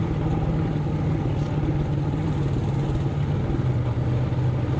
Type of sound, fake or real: real